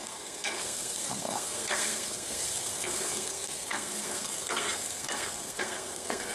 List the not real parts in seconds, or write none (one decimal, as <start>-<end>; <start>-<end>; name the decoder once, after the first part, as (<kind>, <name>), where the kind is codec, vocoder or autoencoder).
0.0-6.3 (codec, SNAC)

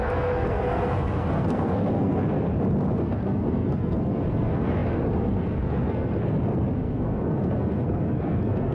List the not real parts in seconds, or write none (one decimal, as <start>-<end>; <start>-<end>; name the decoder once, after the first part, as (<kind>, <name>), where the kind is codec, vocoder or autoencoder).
0.0-2.5 (codec, SNAC); 3.0-8.7

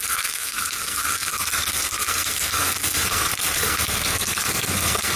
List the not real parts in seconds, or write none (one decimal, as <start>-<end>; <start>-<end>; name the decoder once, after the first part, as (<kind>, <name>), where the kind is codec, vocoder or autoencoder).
0.0-5.2 (codec, SNAC)

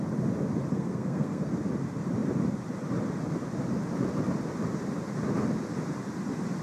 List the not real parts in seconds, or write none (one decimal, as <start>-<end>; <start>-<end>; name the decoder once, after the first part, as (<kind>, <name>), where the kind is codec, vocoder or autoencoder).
0.7-1.5 (codec, SNAC)

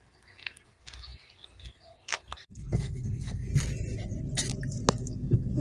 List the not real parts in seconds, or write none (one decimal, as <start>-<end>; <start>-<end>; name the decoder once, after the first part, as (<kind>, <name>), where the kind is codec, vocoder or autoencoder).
0.0-3.5 (codec, SNAC); 5.0-5.6

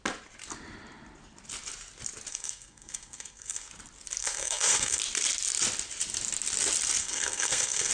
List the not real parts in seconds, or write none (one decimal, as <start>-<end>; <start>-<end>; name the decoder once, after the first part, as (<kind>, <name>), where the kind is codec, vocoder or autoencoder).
2.3-3.7 (codec, SNAC); 4.2-5.0; 7.0-7.9

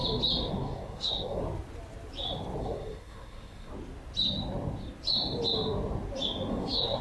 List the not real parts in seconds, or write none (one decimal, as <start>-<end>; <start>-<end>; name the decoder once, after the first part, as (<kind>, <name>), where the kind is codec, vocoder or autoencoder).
0.5-1.4 (codec, SNAC); 2.6-3.7; 6.5-7.0

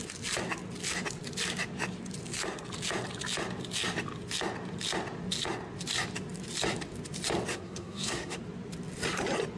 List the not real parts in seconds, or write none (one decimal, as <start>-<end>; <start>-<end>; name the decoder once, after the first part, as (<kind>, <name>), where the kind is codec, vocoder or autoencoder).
7.5-8.4 (codec, SNAC)